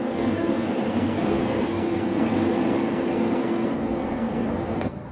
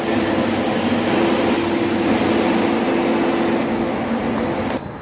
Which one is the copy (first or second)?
first